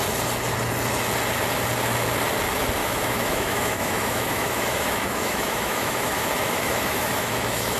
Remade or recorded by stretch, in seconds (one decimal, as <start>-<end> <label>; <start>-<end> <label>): 0.0-2.8 recorded; 2.8-7.8 remade